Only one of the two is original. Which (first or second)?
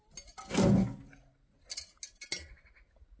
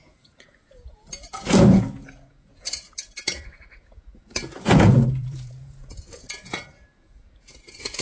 first